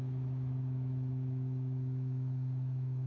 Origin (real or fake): fake